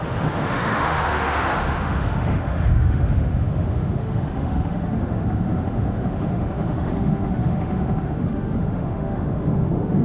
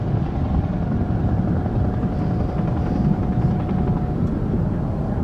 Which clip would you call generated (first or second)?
first